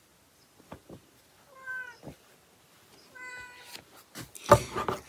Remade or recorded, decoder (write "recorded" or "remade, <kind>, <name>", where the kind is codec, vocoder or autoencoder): recorded